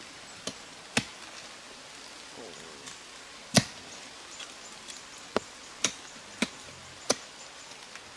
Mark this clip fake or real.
real